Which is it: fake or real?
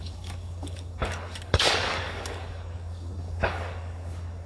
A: fake